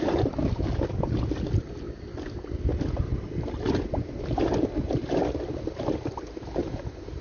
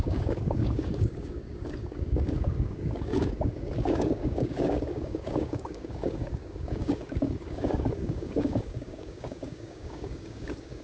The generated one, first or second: second